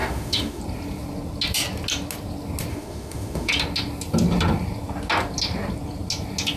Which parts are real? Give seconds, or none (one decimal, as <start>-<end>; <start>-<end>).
0.6-2.7; 3.5-6.6